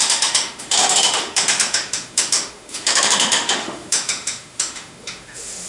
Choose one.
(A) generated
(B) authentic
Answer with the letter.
A